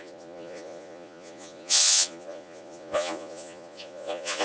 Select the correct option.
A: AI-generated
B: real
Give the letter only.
A